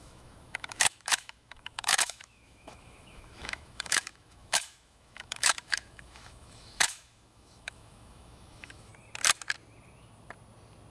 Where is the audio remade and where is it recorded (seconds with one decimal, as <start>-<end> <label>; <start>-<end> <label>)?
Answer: 0.0-8.9 remade; 8.9-10.9 recorded